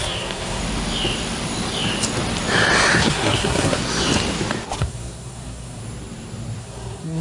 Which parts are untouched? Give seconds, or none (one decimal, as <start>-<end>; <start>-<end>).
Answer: 0.6-3.0; 3.8-4.8; 5.8-6.6